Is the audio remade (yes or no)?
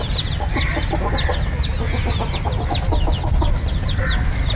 no